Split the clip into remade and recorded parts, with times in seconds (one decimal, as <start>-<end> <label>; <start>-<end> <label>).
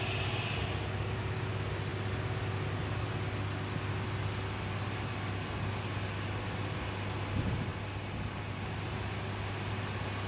0.0-10.3 recorded